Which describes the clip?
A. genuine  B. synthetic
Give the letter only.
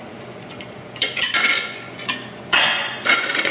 B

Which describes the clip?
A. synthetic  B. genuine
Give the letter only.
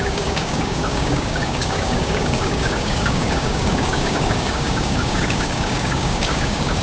A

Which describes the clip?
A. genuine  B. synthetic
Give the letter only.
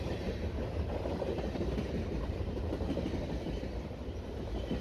B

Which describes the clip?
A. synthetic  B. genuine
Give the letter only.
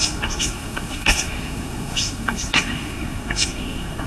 A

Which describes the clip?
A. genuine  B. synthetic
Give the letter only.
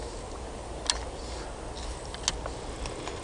A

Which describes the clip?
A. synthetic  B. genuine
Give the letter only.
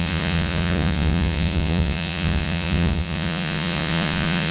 A